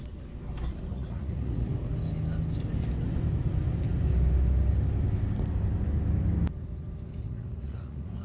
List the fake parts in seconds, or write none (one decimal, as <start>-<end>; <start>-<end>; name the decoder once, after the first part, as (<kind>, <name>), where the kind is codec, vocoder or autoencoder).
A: 0.9-1.7 (vocoder, Vocos); 7.2-8.2